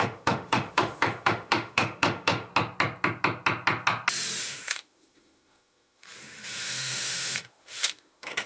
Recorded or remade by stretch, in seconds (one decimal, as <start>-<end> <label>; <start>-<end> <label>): 0.0-2.5 remade; 2.5-4.4 recorded; 4.4-8.5 remade